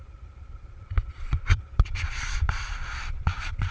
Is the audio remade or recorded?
remade